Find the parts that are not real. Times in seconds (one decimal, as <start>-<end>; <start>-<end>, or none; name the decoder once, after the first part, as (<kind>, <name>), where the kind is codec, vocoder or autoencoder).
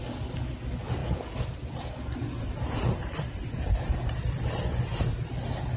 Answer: none